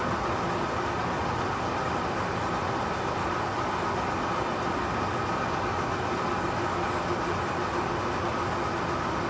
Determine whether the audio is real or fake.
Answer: real